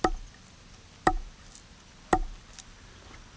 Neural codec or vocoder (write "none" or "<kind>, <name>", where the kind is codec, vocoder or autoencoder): none